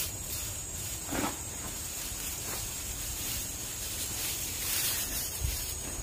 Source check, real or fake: fake